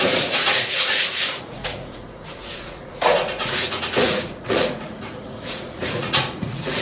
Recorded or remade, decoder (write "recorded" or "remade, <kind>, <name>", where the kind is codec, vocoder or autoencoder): remade, vocoder, Vocos